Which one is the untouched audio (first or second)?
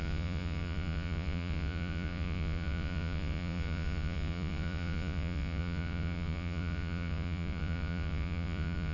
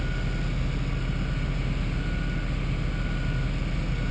second